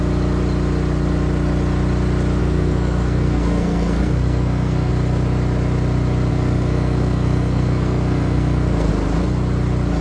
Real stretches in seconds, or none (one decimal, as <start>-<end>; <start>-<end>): 0.0-2.4; 4.9-6.3; 8.9-10.0